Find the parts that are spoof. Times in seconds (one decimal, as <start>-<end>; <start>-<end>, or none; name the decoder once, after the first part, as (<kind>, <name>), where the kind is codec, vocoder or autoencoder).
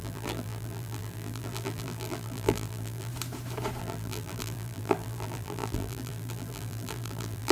0.0-3.1 (vocoder, BigVGAN v2); 3.8-7.5